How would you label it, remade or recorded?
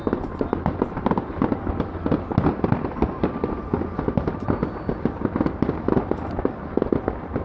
recorded